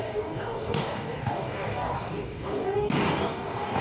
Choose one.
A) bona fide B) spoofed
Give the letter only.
B